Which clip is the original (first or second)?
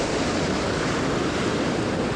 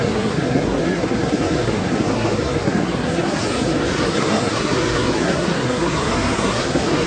first